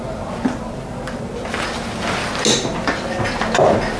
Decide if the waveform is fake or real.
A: real